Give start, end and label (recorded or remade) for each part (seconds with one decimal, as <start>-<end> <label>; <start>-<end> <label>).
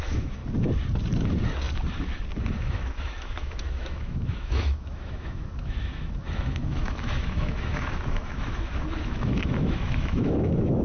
0.0-0.4 remade; 0.4-2.5 recorded; 2.5-10.8 remade